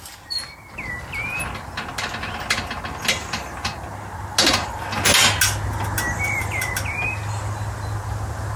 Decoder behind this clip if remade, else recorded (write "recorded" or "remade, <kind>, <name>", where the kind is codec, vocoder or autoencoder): recorded